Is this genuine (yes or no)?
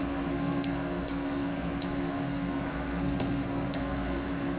no